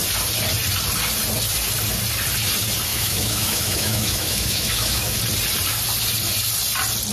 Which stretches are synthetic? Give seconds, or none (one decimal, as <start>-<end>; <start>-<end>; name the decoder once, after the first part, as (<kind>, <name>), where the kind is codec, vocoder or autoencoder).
2.9-5.2 (autoencoder, DAC-VAE)